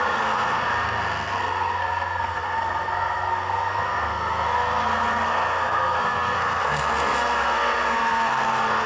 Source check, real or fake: fake